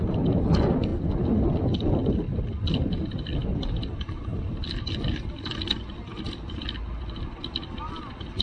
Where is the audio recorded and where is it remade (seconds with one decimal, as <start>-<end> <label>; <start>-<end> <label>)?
0.0-8.4 recorded